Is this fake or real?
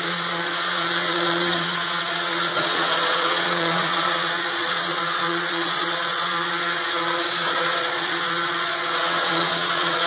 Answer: fake